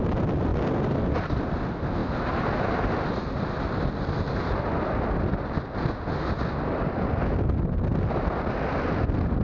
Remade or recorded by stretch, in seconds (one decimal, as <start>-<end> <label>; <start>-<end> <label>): 0.0-9.4 recorded